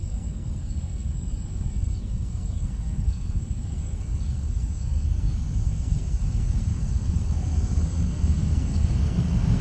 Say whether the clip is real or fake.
fake